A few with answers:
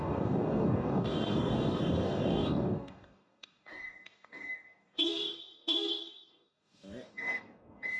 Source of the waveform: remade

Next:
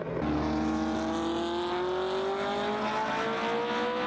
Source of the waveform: recorded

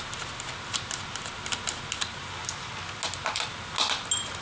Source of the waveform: recorded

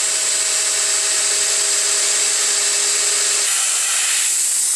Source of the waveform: recorded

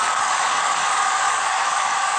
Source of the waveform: remade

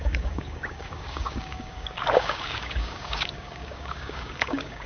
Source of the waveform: remade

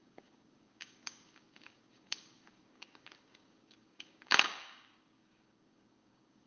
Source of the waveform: remade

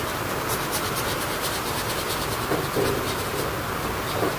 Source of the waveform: recorded